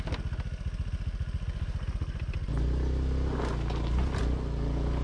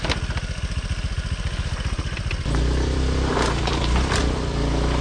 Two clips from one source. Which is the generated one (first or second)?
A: second